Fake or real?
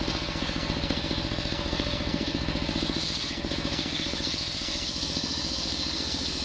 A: fake